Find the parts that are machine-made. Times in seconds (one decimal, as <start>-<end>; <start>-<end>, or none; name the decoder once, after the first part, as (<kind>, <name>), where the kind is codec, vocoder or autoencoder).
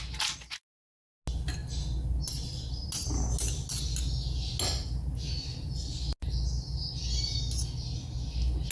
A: none